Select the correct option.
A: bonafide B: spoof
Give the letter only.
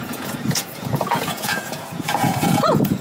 B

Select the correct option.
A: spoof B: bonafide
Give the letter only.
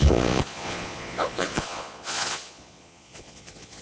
A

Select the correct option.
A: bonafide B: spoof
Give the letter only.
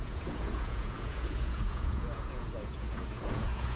B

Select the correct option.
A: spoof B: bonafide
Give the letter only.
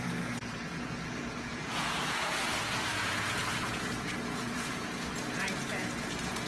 A